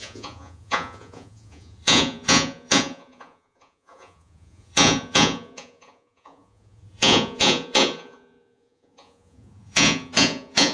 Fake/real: fake